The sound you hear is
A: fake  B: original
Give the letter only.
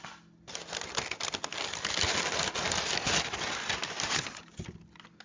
B